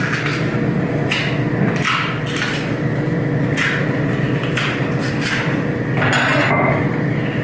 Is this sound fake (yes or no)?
no